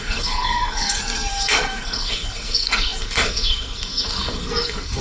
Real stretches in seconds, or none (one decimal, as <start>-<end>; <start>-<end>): none